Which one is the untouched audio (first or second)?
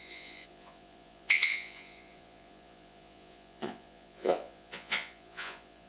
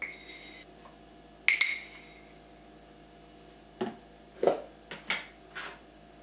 second